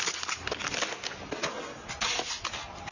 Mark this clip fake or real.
real